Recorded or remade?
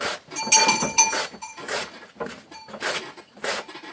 recorded